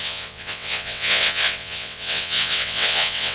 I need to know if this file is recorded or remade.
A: remade